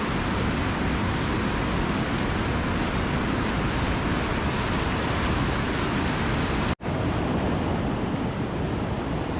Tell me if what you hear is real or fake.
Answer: real